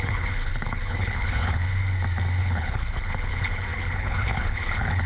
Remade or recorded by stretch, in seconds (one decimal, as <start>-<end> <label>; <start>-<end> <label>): 0.0-1.8 remade; 1.8-2.4 recorded; 2.4-5.1 remade